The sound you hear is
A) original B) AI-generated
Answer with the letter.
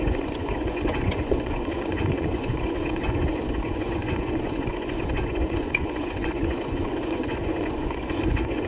B